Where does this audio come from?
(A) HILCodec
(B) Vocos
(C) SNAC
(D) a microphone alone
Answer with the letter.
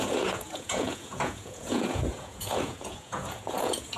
B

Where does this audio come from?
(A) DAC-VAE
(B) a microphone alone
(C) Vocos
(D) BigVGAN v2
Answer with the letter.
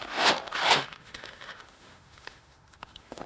A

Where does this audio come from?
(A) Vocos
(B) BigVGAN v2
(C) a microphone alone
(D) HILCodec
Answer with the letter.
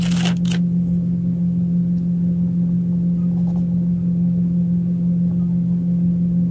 C